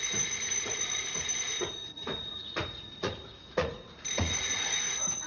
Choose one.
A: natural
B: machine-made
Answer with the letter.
B